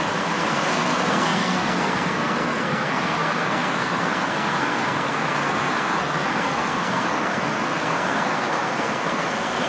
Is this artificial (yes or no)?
yes